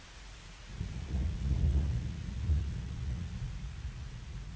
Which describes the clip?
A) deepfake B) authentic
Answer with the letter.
A